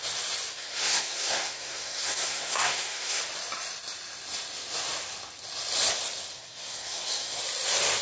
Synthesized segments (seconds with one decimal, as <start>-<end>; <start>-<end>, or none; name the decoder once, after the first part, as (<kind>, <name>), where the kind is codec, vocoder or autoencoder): 0.5-3.2 (codec, SNAC); 6.3-7.4